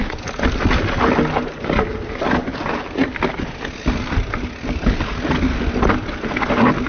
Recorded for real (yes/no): yes